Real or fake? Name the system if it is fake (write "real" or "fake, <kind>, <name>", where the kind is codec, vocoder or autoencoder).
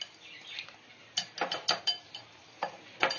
real